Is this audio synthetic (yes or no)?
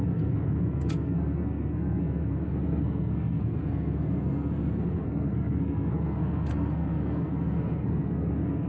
yes